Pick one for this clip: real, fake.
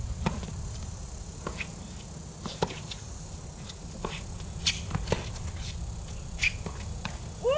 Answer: real